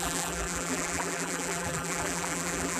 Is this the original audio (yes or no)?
no